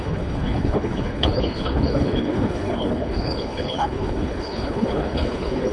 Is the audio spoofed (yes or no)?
yes